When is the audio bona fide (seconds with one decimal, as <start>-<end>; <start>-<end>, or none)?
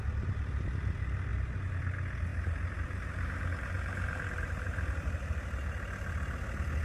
0.0-2.3; 6.1-6.8